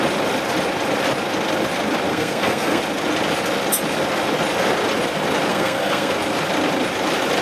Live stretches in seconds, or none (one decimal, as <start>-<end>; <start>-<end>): 0.0-2.1; 2.8-5.5; 6.1-7.4